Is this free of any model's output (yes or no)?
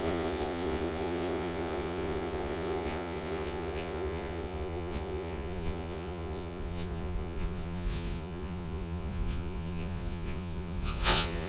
no